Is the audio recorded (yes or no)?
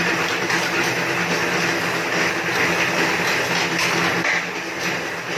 yes